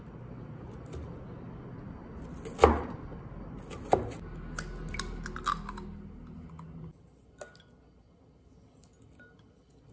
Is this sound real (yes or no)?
yes